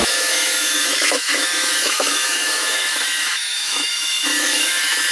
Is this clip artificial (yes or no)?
yes